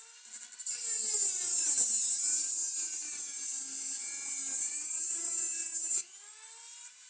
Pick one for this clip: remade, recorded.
recorded